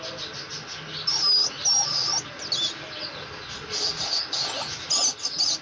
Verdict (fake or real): real